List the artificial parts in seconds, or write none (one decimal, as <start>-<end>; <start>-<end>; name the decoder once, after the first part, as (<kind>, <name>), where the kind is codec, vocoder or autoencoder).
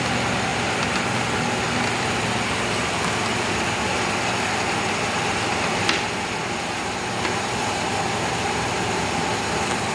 none